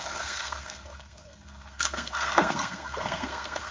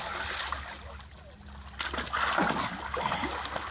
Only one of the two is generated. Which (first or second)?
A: first